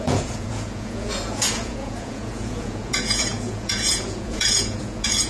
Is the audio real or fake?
fake